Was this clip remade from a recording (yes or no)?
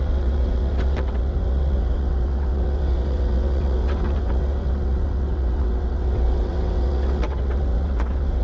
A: yes